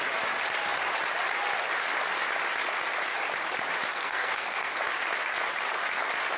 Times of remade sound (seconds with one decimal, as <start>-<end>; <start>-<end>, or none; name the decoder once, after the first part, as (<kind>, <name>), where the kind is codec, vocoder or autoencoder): 3.9-4.8 (codec, SNAC)